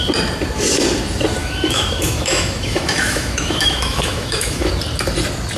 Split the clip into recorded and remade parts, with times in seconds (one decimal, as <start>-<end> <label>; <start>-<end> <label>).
0.0-1.4 recorded; 1.4-4.7 remade; 4.7-5.6 recorded